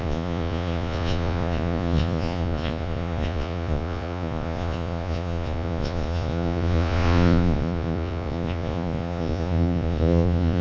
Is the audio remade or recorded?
remade